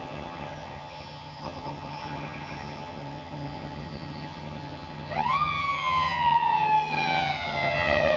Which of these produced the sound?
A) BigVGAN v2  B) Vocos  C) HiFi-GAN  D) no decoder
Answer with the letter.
C